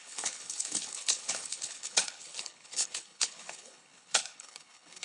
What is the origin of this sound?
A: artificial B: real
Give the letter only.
A